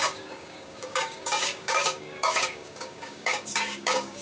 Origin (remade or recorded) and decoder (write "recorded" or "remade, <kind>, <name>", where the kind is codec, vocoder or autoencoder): remade, codec, DAC